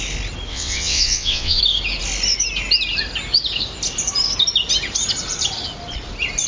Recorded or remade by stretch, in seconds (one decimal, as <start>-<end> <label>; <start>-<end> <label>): 0.0-0.5 recorded; 0.5-1.6 remade; 1.6-6.5 recorded